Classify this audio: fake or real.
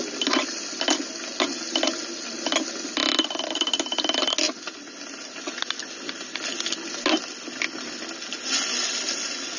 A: real